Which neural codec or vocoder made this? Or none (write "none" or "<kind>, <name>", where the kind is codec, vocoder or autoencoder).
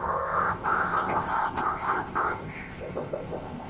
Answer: codec, ZipCodec